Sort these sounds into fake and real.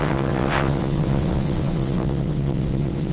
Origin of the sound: fake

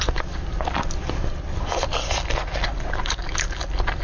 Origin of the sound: real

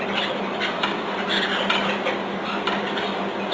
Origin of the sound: real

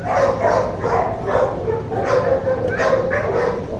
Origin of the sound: real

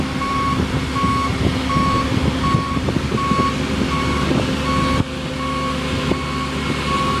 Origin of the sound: real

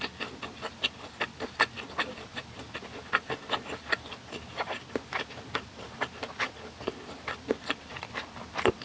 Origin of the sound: real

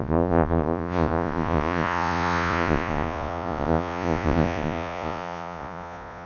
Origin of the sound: fake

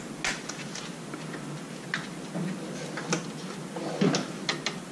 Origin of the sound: real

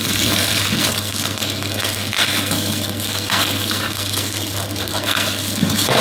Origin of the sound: fake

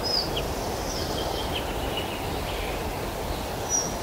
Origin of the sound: real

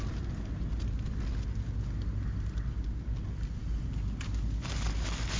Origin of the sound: real